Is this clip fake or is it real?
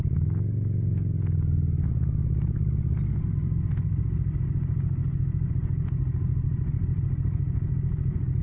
real